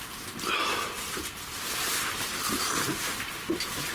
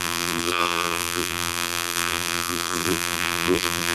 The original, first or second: first